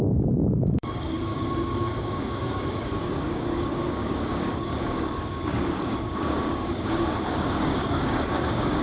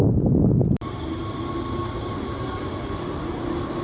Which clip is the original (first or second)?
second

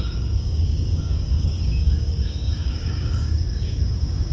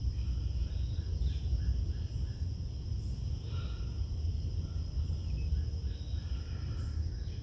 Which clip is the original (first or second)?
second